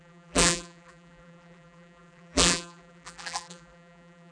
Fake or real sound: fake